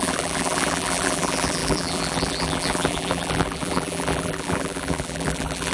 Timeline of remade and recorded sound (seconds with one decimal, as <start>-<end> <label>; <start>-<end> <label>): 0.0-5.7 remade